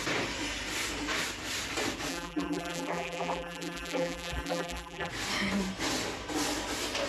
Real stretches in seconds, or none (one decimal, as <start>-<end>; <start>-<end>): 0.0-2.1; 5.1-7.1